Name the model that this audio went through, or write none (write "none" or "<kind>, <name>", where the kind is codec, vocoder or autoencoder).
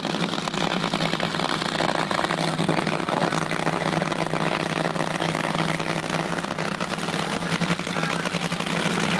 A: none